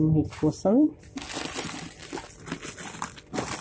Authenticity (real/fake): real